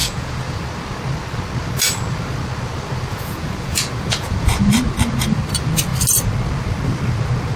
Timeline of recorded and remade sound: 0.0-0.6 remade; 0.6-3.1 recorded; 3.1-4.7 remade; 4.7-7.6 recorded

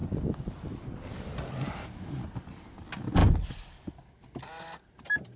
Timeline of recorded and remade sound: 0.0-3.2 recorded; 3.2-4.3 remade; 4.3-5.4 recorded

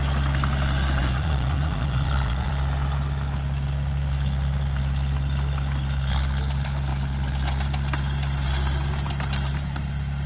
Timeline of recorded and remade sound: 0.0-1.0 recorded; 1.0-2.5 remade; 2.5-10.3 recorded

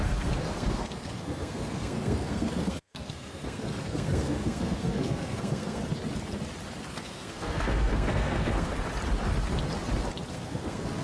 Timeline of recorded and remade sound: 0.0-5.8 remade; 5.8-6.9 recorded; 6.9-8.7 remade; 8.7-10.3 recorded; 10.3-11.0 remade

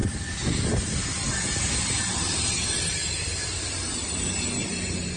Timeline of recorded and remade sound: 0.0-5.2 recorded

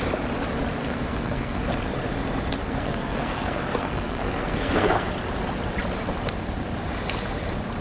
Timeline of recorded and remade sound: 0.0-0.8 recorded; 0.8-1.6 remade; 1.6-2.6 recorded; 2.6-5.1 remade; 5.1-7.8 recorded